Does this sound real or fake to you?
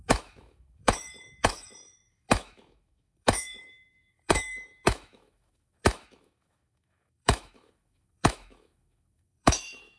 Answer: fake